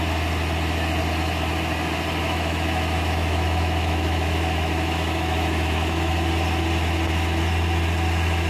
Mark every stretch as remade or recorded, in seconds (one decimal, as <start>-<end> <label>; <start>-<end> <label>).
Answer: 0.0-2.2 recorded; 2.2-6.1 remade; 6.1-8.5 recorded